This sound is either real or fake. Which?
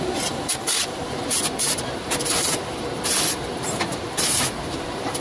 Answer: fake